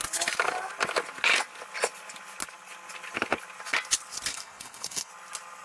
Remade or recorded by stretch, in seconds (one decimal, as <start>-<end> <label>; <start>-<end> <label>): 0.0-4.3 recorded; 4.3-5.1 remade; 5.1-5.6 recorded